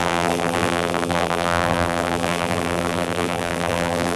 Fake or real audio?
fake